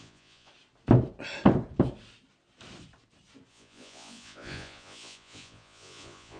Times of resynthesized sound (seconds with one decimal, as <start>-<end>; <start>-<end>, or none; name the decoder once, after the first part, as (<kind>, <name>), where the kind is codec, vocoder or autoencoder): 0.0-0.5 (vocoder, Vocos); 3.5-6.4